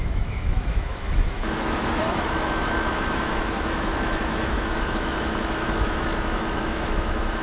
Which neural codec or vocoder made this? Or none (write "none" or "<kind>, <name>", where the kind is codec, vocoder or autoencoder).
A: autoencoder, DAC-VAE